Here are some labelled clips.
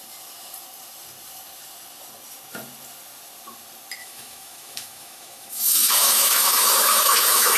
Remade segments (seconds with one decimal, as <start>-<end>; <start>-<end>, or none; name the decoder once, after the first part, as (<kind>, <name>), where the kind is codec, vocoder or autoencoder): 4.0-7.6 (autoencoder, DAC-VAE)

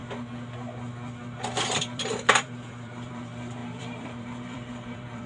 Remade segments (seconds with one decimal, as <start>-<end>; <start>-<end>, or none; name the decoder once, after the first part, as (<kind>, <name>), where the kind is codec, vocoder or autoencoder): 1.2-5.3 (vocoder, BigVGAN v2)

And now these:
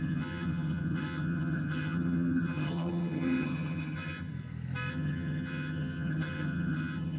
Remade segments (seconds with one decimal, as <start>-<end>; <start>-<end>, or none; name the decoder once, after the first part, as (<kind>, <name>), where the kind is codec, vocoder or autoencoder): 0.0-4.3 (vocoder, HiFi-GAN); 4.9-7.2